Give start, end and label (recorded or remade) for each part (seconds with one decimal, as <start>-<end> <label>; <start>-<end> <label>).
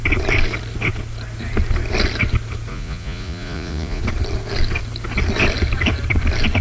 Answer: 0.0-2.7 recorded; 2.7-4.0 remade; 4.0-6.6 recorded